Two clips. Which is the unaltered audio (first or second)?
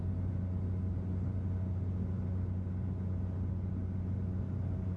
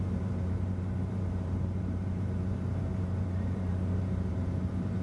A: first